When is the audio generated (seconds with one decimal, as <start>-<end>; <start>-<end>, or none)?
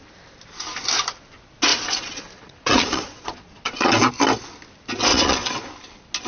1.7-4.1; 5.1-5.7